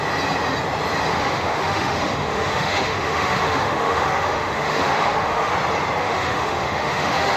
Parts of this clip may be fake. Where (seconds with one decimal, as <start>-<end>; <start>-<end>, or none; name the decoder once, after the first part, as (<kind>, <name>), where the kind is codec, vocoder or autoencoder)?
1.1-5.5 (autoencoder, DAC-VAE); 6.0-7.4